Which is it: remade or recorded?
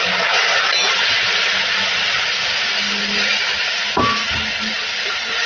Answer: recorded